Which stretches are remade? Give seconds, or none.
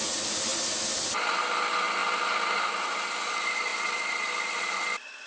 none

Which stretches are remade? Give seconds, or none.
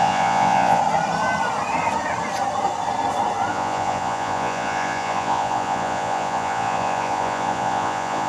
0.0-0.8 (vocoder, Vocos); 3.5-8.3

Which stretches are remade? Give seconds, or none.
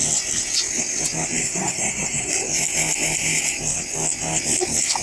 1.4-2.3 (codec, SNAC)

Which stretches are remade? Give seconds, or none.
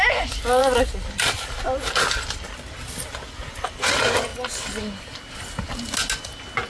none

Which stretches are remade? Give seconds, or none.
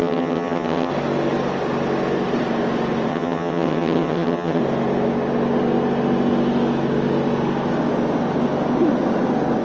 0.0-0.9 (vocoder, HiFi-GAN); 3.1-4.6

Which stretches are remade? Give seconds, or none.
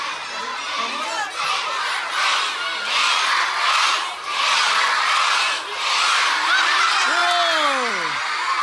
none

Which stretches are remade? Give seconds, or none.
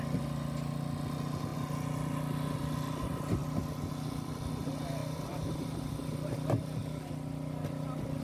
5.0-5.9 (vocoder, BigVGAN v2)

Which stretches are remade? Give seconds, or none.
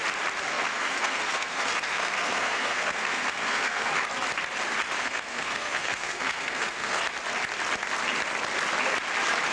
0.5-3.9 (codec, SNAC); 5.0-7.0